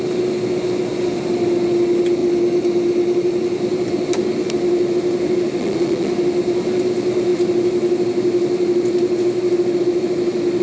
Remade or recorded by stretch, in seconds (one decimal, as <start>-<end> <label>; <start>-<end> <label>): 0.0-5.6 recorded; 5.6-6.1 remade; 6.1-10.6 recorded